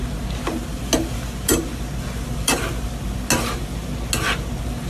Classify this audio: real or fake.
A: real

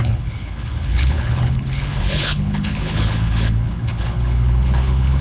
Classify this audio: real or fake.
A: fake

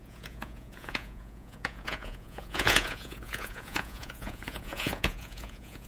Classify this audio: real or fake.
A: fake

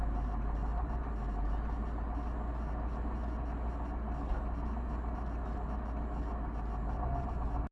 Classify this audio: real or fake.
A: real